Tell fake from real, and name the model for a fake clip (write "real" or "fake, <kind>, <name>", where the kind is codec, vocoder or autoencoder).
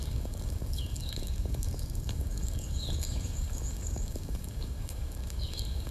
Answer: fake, codec, DAC